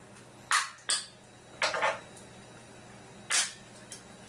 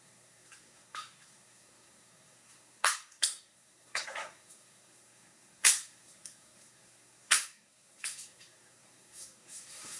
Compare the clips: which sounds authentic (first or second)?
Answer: first